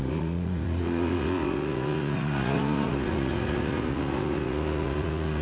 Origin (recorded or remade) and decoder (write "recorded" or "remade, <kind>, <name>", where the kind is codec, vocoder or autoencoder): remade, vocoder, Vocos